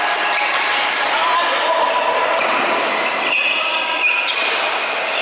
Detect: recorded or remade recorded